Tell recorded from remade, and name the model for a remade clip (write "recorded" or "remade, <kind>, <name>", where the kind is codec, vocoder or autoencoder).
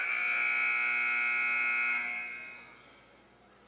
recorded